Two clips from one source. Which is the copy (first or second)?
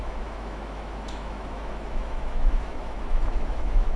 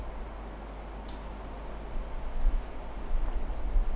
first